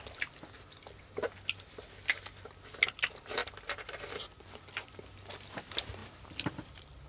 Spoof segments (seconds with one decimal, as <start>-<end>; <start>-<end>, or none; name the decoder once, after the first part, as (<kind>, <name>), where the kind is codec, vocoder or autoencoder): none